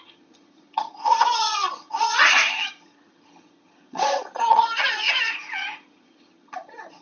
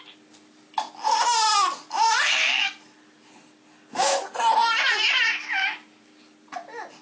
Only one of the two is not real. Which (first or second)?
first